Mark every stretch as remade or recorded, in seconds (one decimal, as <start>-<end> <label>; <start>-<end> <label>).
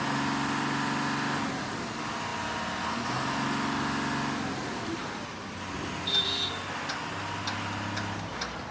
0.0-8.7 recorded